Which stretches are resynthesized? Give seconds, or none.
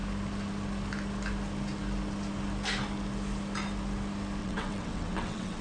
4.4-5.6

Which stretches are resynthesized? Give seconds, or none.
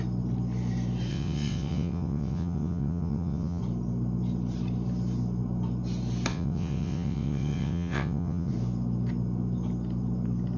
1.1-3.6; 6.3-8.5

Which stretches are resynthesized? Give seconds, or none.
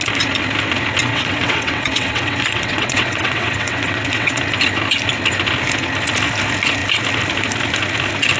1.1-4.4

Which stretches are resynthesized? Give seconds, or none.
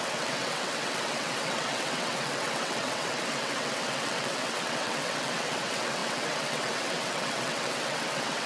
0.0-8.5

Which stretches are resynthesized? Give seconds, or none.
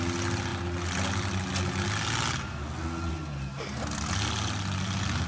none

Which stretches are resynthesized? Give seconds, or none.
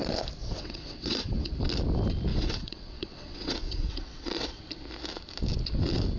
0.4-1.5; 2.3-4.6